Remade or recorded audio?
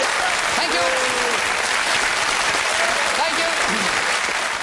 recorded